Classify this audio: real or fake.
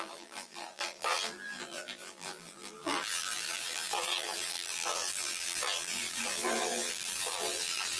fake